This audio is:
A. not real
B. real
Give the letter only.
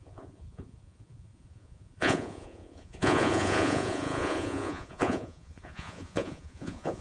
A